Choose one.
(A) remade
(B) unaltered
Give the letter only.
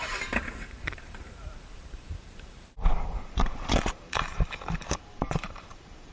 A